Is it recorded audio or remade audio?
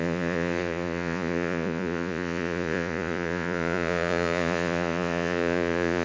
remade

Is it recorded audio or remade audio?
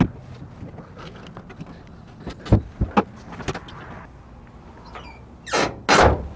recorded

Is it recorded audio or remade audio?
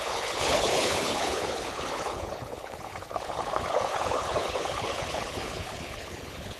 remade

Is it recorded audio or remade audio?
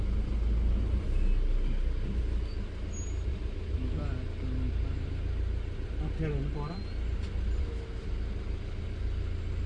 recorded